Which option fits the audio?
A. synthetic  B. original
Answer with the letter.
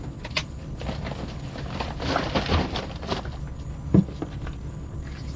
B